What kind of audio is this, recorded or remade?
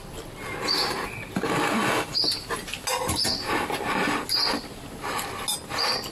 recorded